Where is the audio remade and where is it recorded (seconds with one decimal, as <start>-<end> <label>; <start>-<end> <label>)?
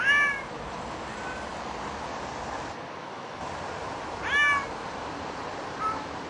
0.0-3.0 recorded; 3.0-3.5 remade; 3.5-6.3 recorded